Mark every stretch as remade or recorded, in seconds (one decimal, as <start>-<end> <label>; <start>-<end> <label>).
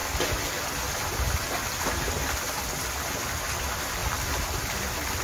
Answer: 0.0-5.2 recorded